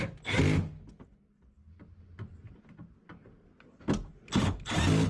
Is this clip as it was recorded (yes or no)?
yes